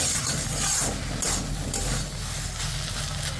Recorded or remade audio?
recorded